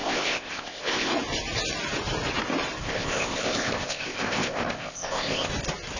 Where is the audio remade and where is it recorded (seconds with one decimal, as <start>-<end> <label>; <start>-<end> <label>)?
0.0-1.1 remade; 1.1-2.8 recorded; 2.8-5.5 remade; 5.5-6.0 recorded